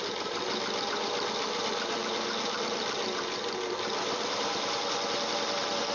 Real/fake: real